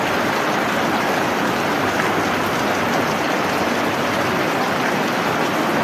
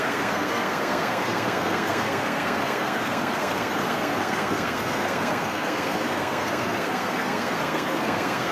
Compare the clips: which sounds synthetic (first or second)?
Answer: second